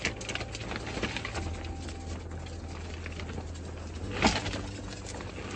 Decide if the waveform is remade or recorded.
recorded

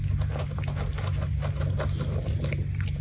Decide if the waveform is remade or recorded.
recorded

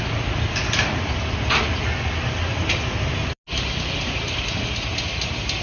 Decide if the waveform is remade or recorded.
recorded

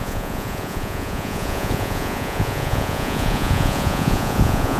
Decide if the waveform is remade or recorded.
remade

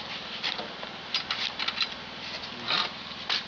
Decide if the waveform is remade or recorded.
recorded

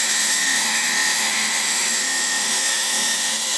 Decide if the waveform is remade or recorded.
remade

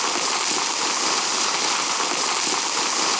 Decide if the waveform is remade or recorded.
recorded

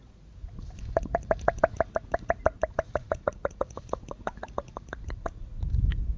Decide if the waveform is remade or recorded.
remade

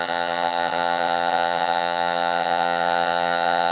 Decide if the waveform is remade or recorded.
remade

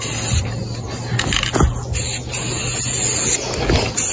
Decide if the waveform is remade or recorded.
recorded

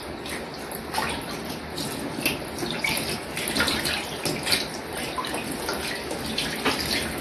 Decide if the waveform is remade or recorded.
recorded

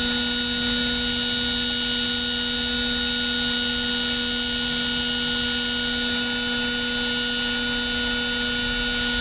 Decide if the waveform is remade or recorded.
recorded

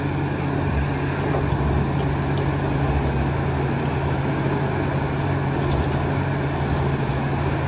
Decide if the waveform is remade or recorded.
recorded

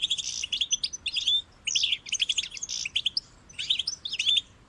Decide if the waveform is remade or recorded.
recorded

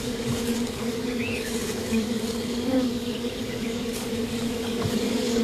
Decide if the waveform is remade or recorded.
remade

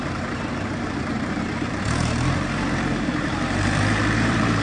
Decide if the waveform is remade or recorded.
remade